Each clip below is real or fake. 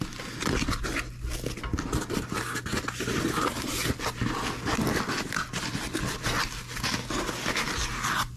real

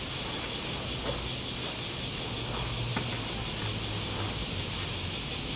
real